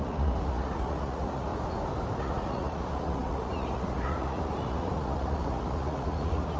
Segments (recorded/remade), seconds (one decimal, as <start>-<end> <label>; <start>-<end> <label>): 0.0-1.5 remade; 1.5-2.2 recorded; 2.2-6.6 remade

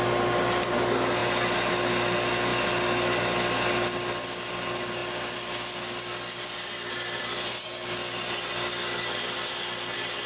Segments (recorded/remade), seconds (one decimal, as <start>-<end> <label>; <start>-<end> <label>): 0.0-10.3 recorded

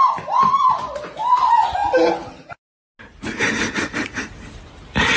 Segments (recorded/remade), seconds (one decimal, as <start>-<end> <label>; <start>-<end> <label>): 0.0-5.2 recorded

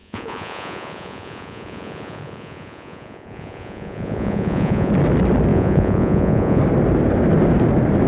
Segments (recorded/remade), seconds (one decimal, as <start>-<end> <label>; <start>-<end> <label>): 0.0-4.9 remade; 4.9-5.5 recorded; 5.5-6.6 remade; 6.6-8.1 recorded

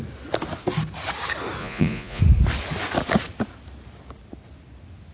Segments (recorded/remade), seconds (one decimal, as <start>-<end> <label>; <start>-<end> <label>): 0.0-1.6 recorded; 1.6-2.2 remade; 2.2-5.1 recorded